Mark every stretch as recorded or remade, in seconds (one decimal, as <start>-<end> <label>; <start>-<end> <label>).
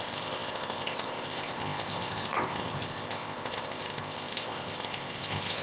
0.0-5.6 remade